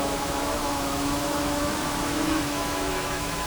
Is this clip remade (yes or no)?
yes